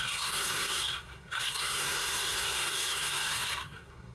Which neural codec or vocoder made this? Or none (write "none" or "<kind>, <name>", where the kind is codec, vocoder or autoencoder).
codec, SNAC